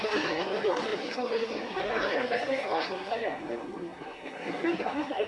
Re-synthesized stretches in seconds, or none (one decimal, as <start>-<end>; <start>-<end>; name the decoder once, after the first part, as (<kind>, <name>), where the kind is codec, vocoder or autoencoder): 0.0-5.3 (codec, SNAC)

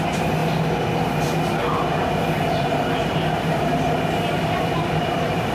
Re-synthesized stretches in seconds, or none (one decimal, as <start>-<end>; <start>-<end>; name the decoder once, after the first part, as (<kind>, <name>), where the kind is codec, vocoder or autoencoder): none

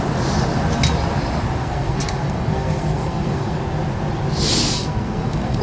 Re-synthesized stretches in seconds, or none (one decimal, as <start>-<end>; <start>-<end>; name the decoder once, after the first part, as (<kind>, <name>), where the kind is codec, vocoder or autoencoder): 1.6-3.6 (codec, SNAC); 4.6-5.6

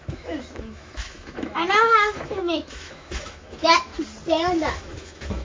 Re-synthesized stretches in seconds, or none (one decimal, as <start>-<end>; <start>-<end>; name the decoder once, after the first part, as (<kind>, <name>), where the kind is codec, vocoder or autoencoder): 0.0-3.9 (autoencoder, DAC-VAE); 4.7-5.4

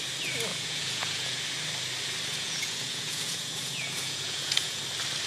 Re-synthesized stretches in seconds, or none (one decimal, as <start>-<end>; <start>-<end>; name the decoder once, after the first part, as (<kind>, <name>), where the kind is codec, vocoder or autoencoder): 0.5-1.4 (vocoder, Vocos); 2.3-4.8